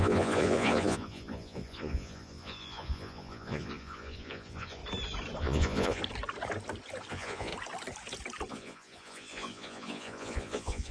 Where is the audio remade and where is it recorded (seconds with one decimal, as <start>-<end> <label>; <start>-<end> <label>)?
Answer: 0.0-4.8 remade; 4.8-5.4 recorded; 5.4-6.0 remade; 6.0-7.1 recorded; 7.1-7.5 remade; 7.5-8.5 recorded; 8.5-10.9 remade